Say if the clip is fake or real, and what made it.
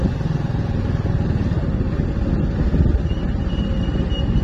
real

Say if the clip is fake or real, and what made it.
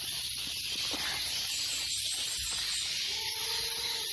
real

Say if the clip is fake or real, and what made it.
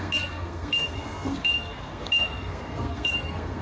fake, codec, SNAC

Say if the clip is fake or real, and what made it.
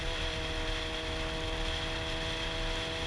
real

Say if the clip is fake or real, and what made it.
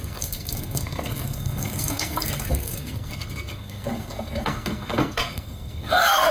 fake, codec, SNAC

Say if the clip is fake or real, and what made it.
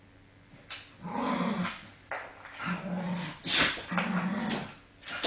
real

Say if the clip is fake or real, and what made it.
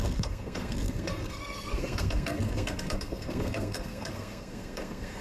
fake, codec, SNAC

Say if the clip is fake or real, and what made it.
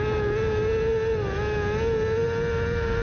real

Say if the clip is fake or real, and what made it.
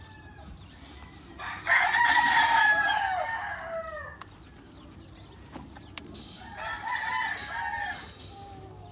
real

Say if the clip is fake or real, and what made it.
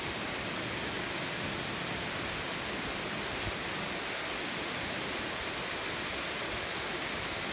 real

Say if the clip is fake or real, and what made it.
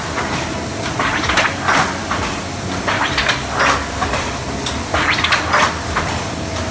real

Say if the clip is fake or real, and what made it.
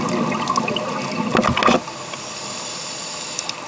real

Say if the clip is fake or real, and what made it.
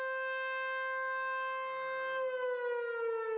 real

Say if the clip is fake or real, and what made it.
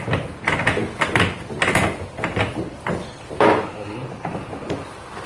real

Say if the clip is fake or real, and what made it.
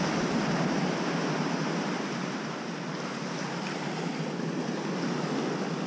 real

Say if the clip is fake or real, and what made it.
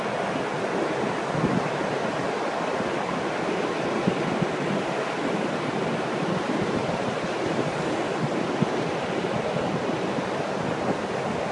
real